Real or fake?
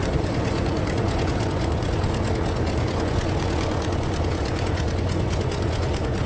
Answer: fake